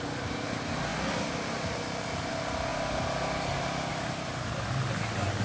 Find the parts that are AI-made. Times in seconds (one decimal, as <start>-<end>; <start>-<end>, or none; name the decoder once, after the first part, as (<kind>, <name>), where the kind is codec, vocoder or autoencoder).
none

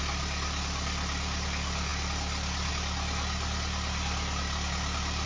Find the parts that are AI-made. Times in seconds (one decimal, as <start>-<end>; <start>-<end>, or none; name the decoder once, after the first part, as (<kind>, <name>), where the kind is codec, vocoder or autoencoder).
none